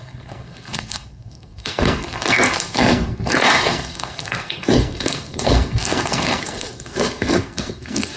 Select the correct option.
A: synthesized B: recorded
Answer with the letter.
A